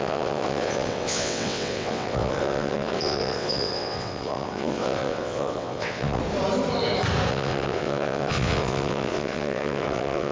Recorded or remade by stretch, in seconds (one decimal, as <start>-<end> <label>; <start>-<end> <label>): 0.0-6.2 remade; 6.2-7.3 recorded; 7.3-10.3 remade